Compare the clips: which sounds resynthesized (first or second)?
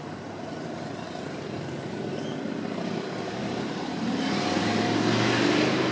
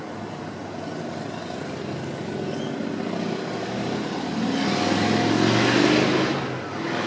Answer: first